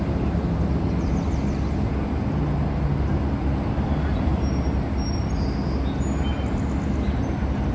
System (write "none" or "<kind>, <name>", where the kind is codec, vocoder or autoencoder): none